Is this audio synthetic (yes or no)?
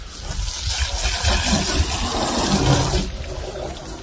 no